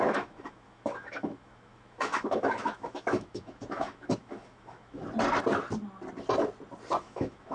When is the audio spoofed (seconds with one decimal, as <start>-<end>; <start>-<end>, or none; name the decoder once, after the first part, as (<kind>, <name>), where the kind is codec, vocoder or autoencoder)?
0.0-5.0 (autoencoder, DAC-VAE); 7.0-7.5